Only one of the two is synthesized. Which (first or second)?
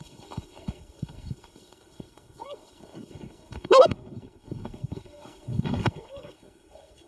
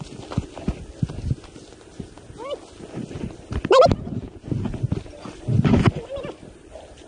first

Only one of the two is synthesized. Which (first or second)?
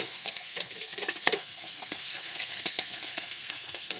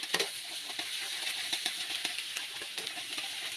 first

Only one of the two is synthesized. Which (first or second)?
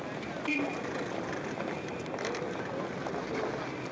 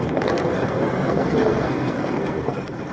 second